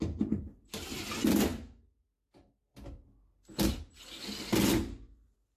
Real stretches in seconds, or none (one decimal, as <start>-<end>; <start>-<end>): 0.0-5.6

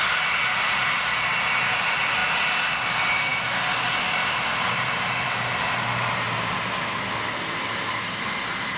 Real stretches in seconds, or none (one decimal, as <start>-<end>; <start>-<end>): 0.0-8.8

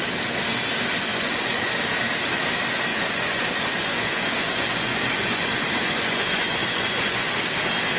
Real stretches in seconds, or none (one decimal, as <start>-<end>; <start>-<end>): 0.0-1.1; 1.7-2.9; 7.3-8.0